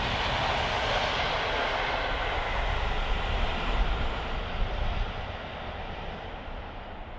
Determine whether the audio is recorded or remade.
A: recorded